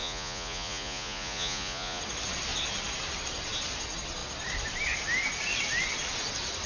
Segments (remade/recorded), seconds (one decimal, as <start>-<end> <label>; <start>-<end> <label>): 0.0-2.0 remade; 2.0-6.7 recorded